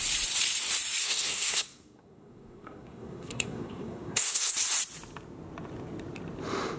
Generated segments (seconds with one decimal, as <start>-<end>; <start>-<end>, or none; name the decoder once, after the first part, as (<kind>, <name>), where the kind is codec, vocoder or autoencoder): 1.0-4.5 (codec, SNAC)